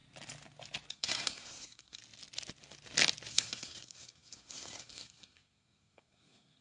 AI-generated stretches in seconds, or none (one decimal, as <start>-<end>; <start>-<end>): 0.9-2.0; 3.3-6.6